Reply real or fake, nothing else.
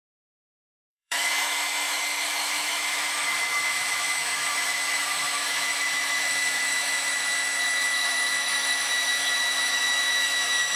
fake